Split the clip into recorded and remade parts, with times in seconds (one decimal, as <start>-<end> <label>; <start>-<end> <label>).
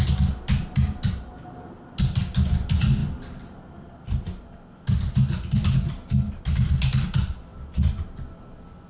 0.0-8.9 recorded